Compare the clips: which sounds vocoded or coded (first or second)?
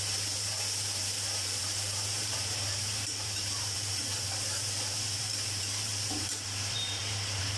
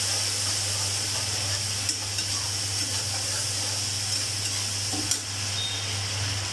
first